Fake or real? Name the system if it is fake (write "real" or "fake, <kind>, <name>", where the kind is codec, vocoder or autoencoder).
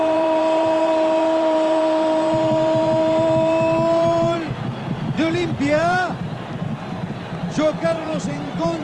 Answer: fake, vocoder, BigVGAN v2